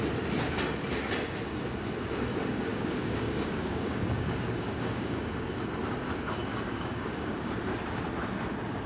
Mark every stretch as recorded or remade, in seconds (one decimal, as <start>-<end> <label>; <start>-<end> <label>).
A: 0.0-2.7 recorded; 2.7-5.6 remade; 5.6-6.5 recorded; 6.5-7.5 remade; 7.5-8.9 recorded